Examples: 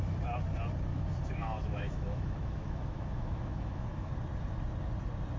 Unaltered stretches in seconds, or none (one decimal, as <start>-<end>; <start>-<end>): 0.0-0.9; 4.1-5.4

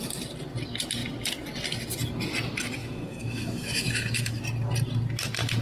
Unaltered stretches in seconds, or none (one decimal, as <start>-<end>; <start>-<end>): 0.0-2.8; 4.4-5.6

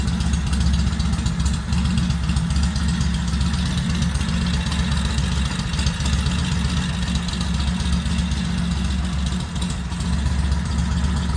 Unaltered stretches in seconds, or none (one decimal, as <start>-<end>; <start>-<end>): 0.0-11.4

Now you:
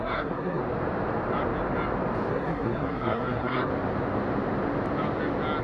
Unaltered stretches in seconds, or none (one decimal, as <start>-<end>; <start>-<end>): 0.6-2.3; 3.7-5.6